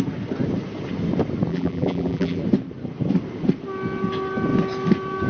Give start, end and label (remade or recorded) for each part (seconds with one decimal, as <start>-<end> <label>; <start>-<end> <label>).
0.0-1.5 recorded; 1.5-2.4 remade; 2.4-5.3 recorded